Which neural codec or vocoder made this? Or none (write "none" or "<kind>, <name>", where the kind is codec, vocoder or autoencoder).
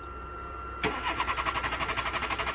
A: none